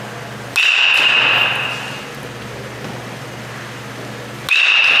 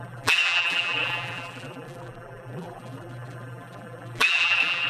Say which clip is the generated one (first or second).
second